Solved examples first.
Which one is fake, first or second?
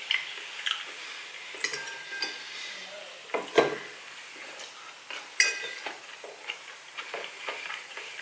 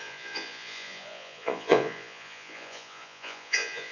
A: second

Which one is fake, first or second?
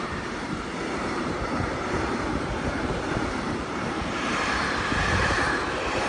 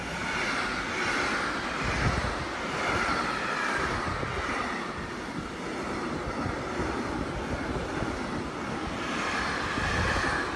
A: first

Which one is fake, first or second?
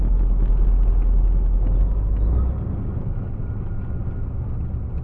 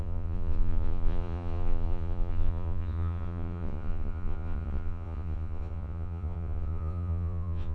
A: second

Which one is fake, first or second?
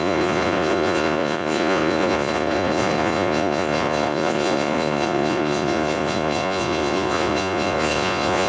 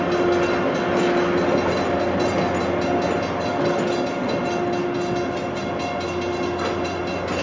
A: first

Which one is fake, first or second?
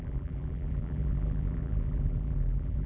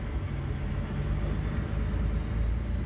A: first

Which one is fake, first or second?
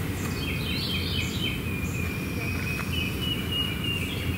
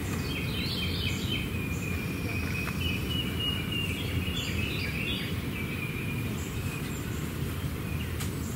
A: second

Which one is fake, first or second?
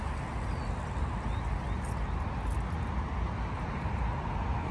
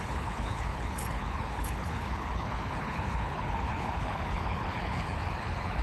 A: second